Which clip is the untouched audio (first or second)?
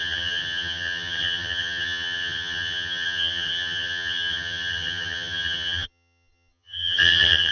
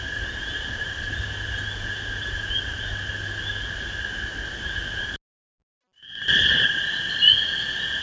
second